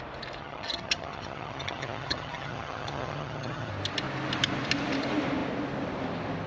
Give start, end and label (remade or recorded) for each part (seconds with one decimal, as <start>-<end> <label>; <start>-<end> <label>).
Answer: 0.0-0.4 recorded; 0.4-3.7 remade; 3.7-6.5 recorded